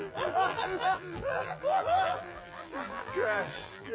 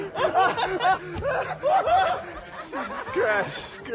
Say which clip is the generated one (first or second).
first